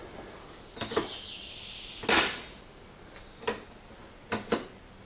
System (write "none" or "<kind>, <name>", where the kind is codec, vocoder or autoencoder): none